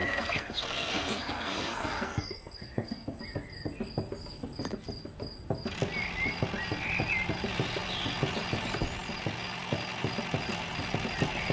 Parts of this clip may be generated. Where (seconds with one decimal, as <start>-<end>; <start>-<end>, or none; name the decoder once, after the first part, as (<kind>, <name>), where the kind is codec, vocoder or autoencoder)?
0.0-3.2 (codec, SNAC)

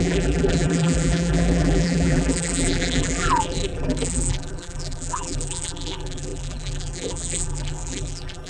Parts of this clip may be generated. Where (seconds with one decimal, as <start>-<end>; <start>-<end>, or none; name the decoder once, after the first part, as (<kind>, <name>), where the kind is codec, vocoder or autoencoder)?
0.0-8.5 (vocoder, BigVGAN v2)

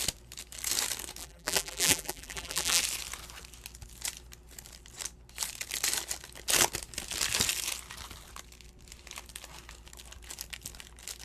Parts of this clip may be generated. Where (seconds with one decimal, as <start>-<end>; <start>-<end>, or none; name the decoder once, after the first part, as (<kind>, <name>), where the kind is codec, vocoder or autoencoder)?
1.2-2.8 (vocoder, BigVGAN v2)

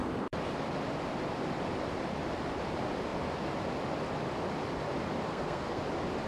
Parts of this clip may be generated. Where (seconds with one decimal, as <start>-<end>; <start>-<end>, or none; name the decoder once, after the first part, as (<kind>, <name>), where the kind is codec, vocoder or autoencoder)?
5.3-5.8 (codec, SNAC)

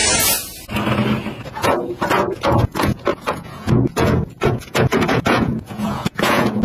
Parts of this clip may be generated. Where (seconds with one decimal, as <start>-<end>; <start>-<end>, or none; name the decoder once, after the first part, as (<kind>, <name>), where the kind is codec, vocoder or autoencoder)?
1.5-6.6 (vocoder, Vocos)

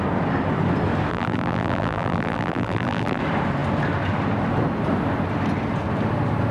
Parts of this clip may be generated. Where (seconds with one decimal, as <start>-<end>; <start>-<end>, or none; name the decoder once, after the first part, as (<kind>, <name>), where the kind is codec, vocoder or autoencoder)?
1.1-3.2 (vocoder, BigVGAN v2)